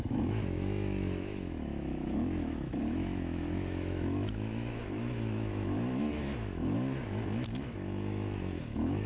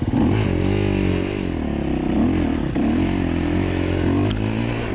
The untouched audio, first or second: second